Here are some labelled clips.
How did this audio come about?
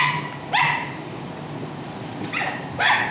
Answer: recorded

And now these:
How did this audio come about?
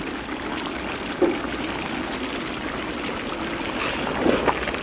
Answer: recorded